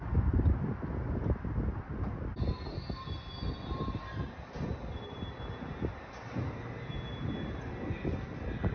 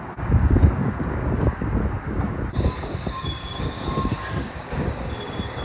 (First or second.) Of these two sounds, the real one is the first